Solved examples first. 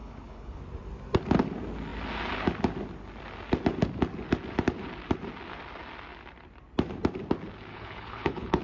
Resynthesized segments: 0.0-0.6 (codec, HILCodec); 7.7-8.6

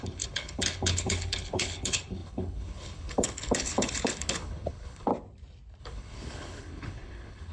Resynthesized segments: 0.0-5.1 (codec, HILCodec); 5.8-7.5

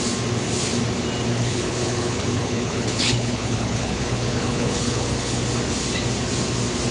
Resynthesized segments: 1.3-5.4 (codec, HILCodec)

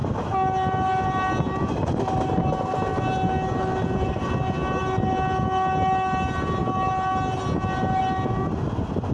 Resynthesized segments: none

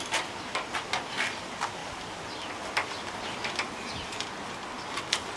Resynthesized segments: none

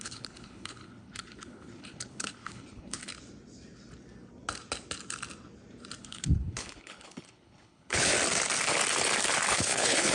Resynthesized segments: 0.0-3.1 (codec, HILCodec); 6.0-8.1; 9.5-10.1